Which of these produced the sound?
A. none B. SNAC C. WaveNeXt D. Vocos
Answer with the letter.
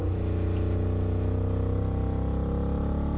A